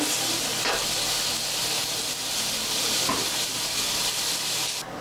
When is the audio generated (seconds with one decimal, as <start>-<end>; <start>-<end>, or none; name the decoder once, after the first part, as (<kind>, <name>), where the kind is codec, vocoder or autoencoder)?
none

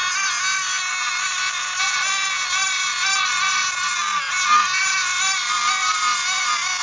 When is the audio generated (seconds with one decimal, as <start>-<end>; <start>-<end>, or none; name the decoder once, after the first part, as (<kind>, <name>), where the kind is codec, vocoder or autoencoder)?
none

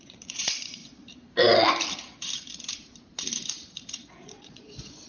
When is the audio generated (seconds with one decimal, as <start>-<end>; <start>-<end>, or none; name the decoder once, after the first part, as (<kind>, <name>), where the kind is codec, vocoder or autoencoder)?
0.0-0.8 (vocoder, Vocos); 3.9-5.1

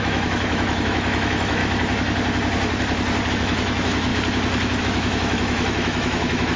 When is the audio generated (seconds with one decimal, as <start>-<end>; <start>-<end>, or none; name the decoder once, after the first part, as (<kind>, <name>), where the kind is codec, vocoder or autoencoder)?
0.0-1.6 (autoencoder, DAC-VAE); 3.3-4.1; 4.8-6.6